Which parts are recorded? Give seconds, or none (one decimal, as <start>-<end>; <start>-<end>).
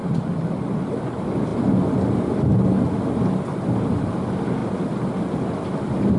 0.0-4.6; 5.6-6.2